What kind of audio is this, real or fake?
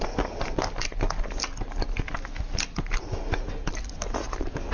real